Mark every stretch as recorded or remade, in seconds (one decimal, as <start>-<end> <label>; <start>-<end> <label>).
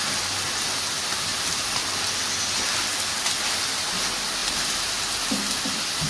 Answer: 0.0-1.3 recorded; 1.3-2.0 remade; 2.0-4.4 recorded; 4.4-5.0 remade; 5.0-6.1 recorded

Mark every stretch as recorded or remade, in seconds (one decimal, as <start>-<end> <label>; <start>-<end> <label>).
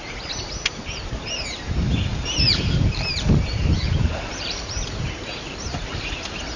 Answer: 0.0-2.1 recorded; 2.1-6.1 remade; 6.1-6.6 recorded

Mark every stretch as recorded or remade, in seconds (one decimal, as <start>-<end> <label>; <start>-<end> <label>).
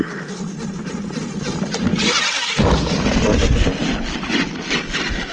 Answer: 0.0-3.8 recorded; 3.8-5.3 remade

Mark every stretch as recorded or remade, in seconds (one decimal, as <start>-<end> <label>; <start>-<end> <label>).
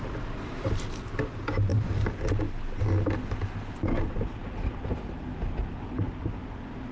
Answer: 0.0-1.7 recorded; 1.7-2.2 remade; 2.2-6.9 recorded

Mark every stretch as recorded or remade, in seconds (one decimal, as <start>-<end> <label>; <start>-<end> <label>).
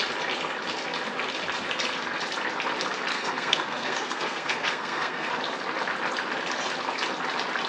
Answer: 0.0-3.1 recorded; 3.1-5.3 remade; 5.3-7.7 recorded